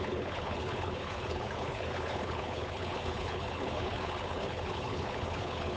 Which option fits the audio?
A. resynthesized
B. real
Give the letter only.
A